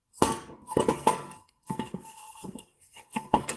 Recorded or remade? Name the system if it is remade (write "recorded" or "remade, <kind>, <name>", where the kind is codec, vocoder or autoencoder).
remade, codec, SNAC